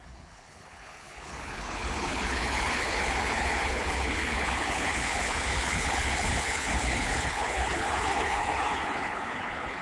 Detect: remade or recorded remade